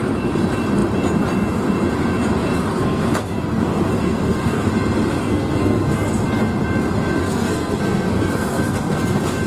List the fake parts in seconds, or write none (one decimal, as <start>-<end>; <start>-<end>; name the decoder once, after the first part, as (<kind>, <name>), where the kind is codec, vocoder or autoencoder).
2.7-4.7 (codec, SNAC); 5.2-6.1; 7.2-9.0